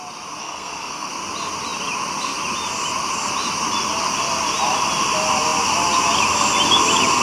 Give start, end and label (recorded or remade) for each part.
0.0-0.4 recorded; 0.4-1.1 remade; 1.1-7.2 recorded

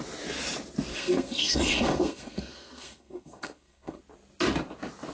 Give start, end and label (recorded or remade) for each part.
0.0-0.9 recorded; 0.9-4.0 remade; 4.0-5.1 recorded

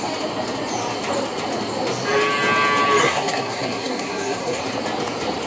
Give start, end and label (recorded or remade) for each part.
0.0-3.0 recorded; 3.0-4.6 remade; 4.6-5.5 recorded